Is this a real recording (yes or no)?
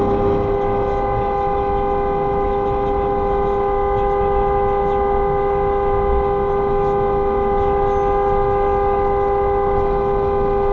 yes